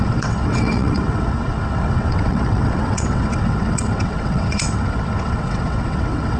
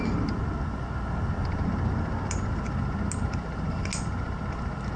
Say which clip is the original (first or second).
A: second